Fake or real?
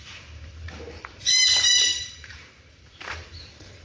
fake